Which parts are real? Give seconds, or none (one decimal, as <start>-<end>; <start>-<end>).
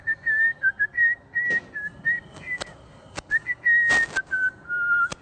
0.0-5.2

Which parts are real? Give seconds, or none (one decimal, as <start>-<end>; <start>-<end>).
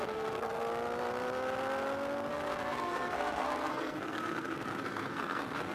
0.6-2.3